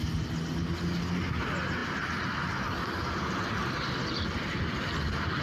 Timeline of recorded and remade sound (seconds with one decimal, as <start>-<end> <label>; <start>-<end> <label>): 0.0-5.4 recorded